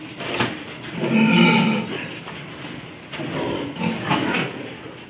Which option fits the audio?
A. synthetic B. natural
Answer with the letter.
B